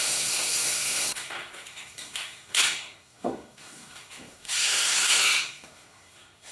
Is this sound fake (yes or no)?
yes